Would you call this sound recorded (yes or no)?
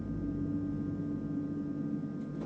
yes